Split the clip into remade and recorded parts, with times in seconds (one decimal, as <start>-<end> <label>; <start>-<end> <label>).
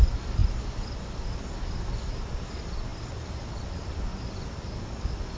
0.0-5.4 recorded